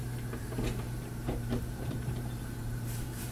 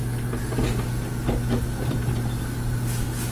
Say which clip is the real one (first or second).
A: second